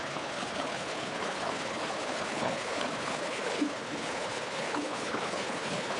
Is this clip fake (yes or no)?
yes